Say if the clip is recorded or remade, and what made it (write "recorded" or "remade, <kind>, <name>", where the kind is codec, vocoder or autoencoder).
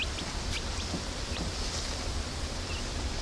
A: recorded